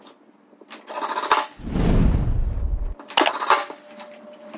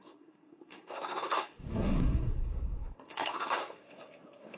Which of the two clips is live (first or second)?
first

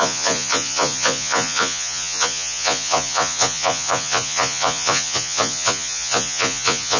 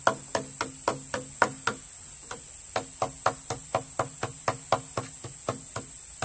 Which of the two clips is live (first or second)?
second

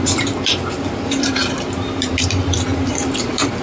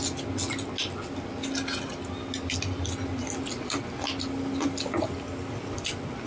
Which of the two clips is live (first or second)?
second